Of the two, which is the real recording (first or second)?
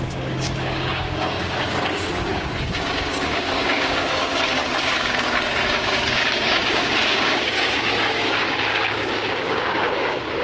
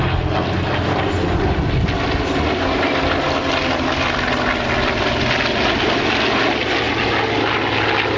second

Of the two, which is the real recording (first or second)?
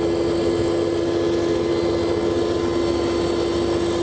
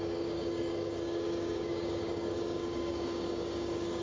first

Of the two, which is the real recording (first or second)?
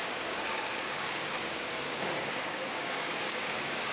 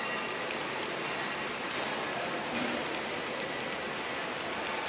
second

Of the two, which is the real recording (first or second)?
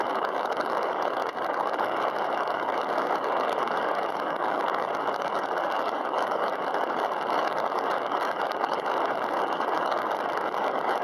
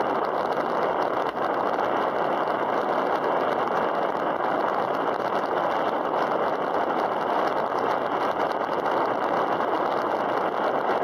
second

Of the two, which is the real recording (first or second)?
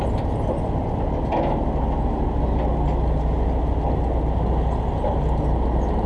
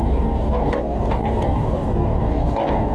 first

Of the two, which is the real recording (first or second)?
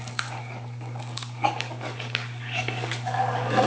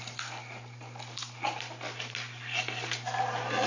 second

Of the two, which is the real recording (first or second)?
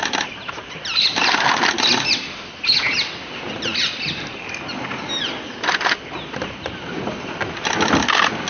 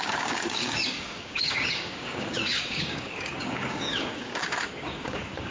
first